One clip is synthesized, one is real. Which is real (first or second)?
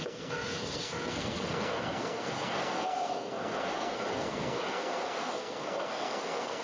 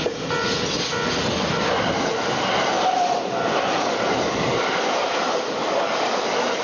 second